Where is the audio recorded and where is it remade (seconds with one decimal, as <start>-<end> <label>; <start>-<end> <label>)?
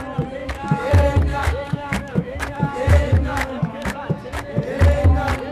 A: 0.0-0.4 recorded; 0.4-0.9 remade; 0.9-1.3 recorded; 1.3-4.6 remade; 4.6-5.5 recorded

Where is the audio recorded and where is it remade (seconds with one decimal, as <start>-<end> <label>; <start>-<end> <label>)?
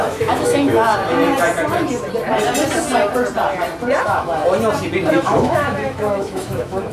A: 0.0-0.9 remade; 0.9-4.0 recorded; 4.0-4.4 remade; 4.4-5.1 recorded; 5.1-6.9 remade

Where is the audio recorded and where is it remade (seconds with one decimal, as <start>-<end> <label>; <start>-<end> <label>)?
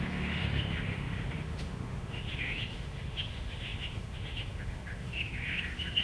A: 0.0-6.0 remade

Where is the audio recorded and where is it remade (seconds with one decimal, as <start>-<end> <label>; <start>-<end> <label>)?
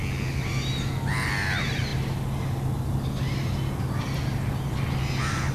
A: 0.0-5.5 recorded